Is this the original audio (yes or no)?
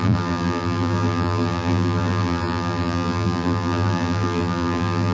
no